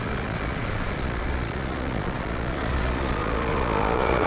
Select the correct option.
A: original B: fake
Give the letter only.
B